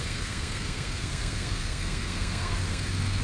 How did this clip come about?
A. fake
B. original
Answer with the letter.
A